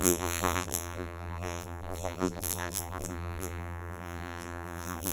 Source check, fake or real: fake